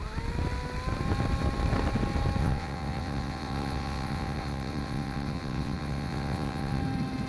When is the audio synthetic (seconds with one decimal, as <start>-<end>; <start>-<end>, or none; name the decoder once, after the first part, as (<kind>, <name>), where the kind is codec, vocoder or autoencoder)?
2.4-6.8 (vocoder, WaveNeXt)